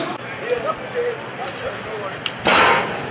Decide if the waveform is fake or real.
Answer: real